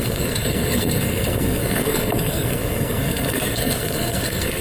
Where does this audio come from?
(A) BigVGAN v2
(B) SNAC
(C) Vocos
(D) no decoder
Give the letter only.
B